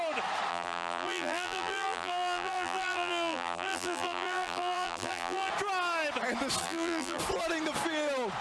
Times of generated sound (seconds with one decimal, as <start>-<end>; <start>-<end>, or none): 0.5-5.5; 6.6-7.2